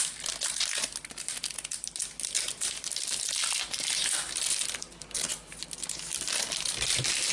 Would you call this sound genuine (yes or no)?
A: yes